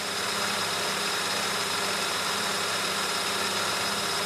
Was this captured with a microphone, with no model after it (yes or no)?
no